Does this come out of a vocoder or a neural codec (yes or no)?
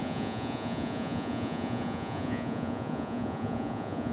yes